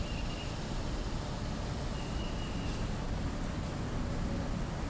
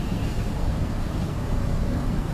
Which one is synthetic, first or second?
second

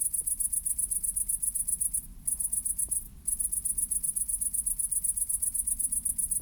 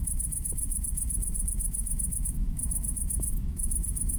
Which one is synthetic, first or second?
second